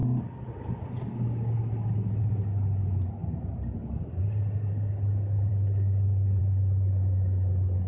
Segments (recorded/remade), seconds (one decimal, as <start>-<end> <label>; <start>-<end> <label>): 0.0-5.5 recorded; 5.5-6.4 remade; 6.4-7.9 recorded